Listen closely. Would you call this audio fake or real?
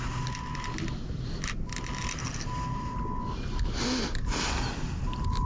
real